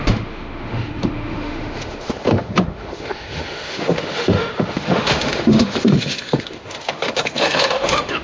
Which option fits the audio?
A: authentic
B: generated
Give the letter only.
B